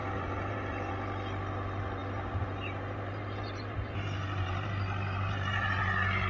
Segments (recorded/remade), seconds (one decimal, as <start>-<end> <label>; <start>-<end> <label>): 0.0-0.9 remade; 0.9-2.0 recorded; 2.0-5.8 remade; 5.8-6.3 recorded